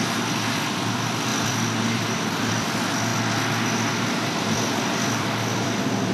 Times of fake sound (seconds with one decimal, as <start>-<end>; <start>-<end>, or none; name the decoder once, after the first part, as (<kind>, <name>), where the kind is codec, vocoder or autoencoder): 0.0-3.1 (vocoder, BigVGAN v2); 4.5-6.1